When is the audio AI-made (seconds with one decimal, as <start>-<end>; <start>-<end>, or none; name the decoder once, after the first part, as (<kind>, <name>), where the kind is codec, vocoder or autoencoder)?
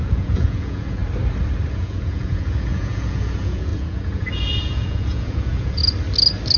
0.0-1.0 (vocoder, Vocos); 1.7-5.8